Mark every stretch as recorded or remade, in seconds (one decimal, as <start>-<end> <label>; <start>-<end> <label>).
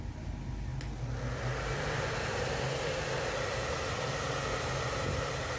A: 0.0-5.6 recorded